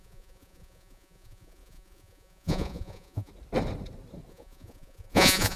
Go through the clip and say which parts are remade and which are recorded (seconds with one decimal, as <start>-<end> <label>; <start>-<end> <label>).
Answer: 0.0-3.3 remade; 3.3-4.3 recorded; 4.3-5.6 remade